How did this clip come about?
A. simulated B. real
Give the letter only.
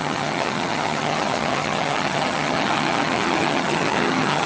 A